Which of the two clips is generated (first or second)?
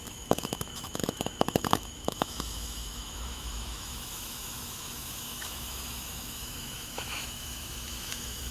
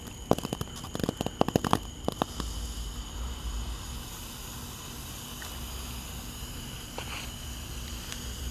first